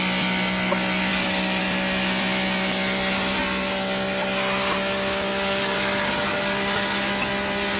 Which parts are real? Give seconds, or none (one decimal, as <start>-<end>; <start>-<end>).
0.0-1.1; 1.6-5.3; 7.1-7.8